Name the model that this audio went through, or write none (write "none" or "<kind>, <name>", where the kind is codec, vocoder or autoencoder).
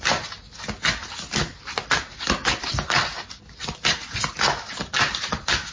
none